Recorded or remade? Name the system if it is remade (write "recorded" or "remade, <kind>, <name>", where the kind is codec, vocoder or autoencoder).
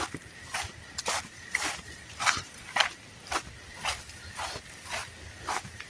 remade, vocoder, BigVGAN v2